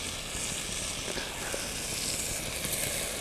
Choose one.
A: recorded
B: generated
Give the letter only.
A